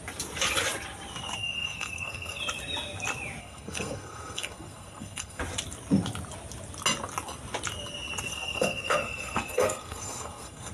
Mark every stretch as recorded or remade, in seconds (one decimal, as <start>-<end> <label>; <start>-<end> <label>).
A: 0.0-1.4 recorded; 1.4-2.4 remade; 2.4-3.4 recorded; 3.4-5.4 remade; 5.4-8.3 recorded; 8.3-10.7 remade